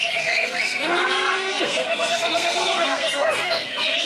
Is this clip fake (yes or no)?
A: yes